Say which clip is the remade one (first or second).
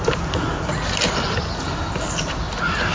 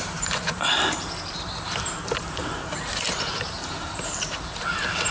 second